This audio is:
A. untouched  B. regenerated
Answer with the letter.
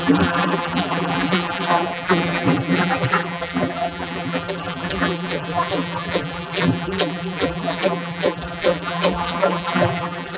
B